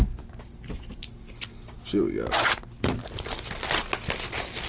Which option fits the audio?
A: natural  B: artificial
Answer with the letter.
A